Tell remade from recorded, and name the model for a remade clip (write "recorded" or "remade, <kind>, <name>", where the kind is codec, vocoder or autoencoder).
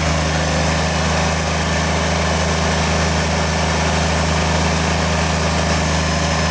recorded